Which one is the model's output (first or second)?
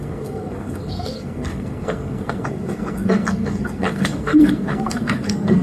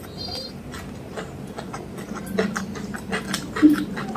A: first